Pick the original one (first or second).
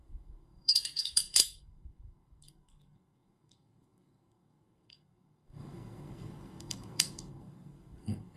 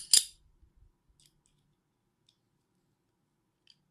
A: second